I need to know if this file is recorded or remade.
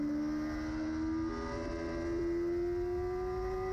recorded